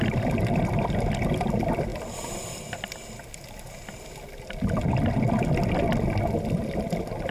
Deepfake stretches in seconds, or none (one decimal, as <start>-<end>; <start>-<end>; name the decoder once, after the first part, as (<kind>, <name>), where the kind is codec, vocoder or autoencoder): none